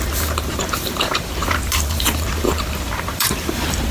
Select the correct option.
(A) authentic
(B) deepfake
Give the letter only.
B